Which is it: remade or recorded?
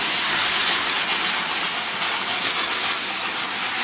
recorded